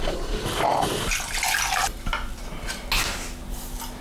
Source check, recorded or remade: recorded